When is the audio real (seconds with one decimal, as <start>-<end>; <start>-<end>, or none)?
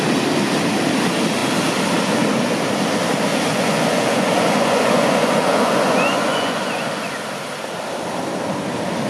0.0-3.3; 7.2-9.1